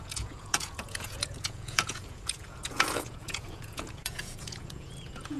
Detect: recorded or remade remade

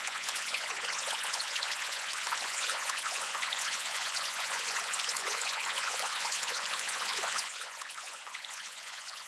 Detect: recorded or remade remade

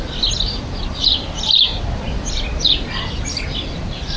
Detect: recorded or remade recorded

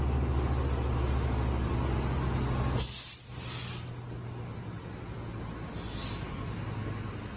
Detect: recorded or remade recorded